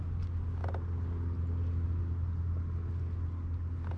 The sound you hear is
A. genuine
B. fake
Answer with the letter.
A